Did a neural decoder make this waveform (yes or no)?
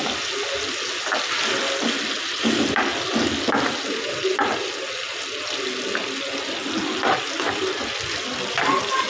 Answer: no